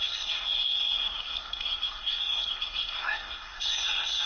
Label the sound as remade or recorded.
remade